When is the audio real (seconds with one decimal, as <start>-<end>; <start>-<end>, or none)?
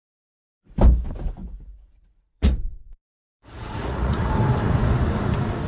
0.0-1.4; 4.3-5.7